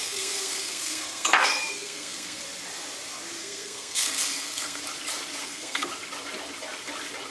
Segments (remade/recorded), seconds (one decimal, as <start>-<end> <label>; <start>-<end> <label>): 0.0-2.4 remade; 2.4-3.4 recorded; 3.4-4.8 remade; 4.8-5.4 recorded; 5.4-5.9 remade; 5.9-7.3 recorded